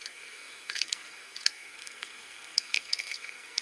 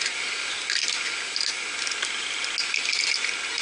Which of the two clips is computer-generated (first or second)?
first